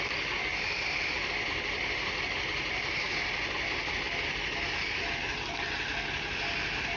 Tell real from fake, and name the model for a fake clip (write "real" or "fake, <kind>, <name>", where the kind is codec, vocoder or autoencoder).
real